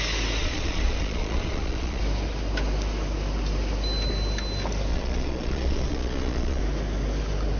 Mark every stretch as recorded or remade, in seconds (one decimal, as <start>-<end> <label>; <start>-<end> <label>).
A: 0.0-0.4 recorded; 0.4-2.0 remade; 2.0-4.9 recorded; 4.9-6.6 remade; 6.6-7.6 recorded